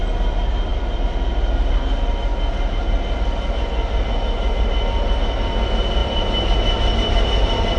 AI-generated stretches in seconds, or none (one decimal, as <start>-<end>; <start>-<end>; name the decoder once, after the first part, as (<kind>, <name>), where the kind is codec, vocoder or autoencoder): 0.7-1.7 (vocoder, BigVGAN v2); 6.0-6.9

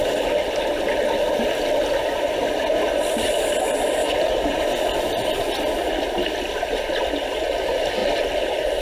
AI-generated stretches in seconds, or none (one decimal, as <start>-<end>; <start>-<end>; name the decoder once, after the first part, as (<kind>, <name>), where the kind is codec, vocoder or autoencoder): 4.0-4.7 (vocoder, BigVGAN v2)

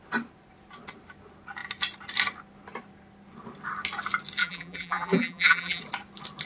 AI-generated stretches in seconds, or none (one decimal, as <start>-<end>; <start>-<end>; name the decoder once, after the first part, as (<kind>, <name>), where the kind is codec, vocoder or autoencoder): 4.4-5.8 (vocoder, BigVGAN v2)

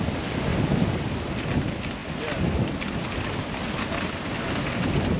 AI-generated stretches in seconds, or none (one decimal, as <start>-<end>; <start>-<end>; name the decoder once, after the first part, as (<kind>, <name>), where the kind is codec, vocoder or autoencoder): 0.0-0.5 (vocoder, BigVGAN v2); 1.6-5.2